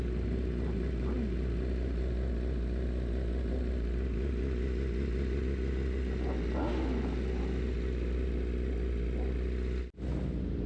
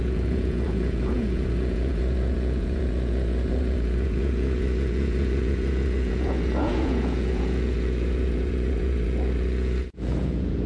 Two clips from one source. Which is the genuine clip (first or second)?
first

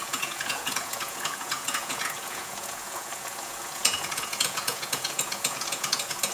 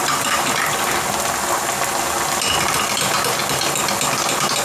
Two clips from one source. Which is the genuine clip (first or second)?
second